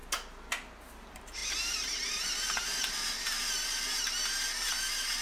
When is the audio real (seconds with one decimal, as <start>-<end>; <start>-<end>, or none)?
0.0-0.9